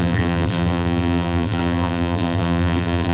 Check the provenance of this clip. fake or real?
fake